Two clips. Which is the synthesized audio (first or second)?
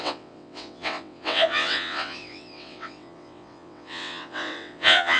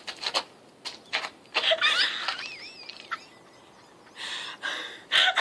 first